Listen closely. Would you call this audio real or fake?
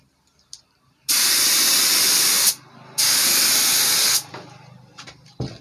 real